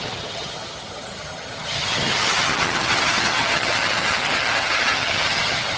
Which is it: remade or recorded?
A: remade